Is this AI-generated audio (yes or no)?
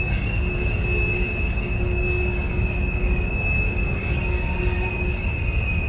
yes